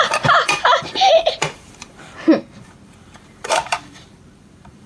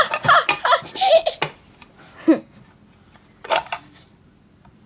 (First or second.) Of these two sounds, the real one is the second